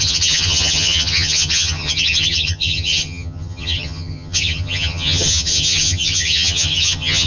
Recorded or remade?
remade